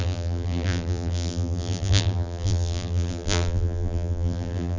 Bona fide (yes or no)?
no